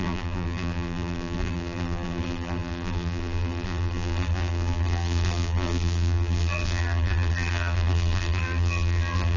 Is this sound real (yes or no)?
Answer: no